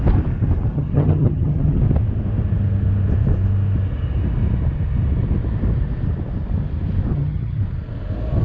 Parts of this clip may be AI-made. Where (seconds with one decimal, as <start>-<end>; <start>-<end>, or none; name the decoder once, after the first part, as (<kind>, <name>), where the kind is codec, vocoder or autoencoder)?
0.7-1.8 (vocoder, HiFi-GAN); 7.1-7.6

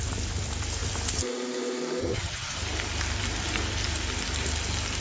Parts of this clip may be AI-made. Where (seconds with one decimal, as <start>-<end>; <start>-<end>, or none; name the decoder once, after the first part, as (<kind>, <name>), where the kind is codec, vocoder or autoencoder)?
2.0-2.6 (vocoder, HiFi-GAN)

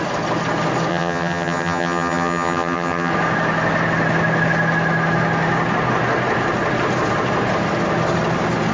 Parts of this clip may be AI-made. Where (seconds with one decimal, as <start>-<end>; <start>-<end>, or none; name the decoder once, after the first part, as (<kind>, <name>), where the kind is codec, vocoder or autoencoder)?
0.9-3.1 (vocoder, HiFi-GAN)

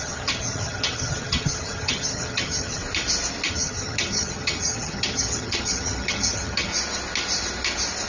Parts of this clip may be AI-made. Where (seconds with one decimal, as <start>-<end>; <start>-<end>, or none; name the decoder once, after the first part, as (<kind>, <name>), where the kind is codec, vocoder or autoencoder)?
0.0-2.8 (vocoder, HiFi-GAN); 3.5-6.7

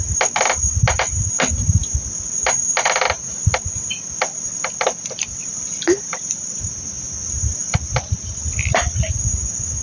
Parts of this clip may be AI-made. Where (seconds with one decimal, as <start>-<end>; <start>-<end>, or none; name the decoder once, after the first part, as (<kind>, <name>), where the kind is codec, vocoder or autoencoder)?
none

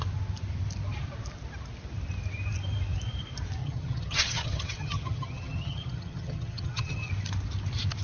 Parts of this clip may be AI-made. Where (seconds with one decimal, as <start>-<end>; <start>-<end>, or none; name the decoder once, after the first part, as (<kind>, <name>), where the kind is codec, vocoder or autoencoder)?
3.6-7.1 (vocoder, HiFi-GAN)